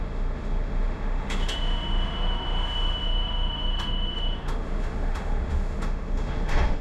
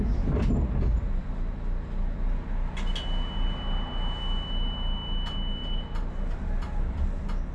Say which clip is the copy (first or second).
first